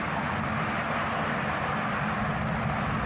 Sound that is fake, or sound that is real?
real